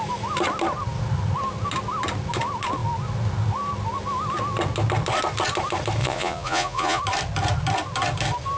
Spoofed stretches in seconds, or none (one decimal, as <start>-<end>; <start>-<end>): 6.0-7.0